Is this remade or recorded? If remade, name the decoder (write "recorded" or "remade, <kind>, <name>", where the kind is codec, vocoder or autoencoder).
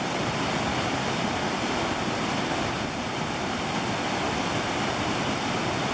recorded